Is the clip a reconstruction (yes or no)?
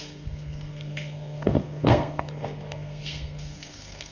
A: yes